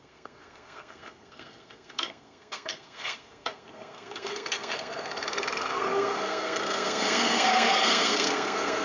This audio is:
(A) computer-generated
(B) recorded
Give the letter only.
A